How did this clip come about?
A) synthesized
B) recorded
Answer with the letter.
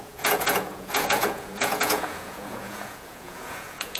A